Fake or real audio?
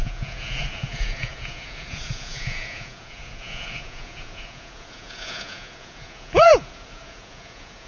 fake